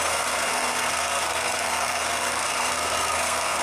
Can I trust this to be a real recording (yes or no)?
no